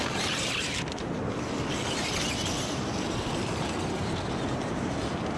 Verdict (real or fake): real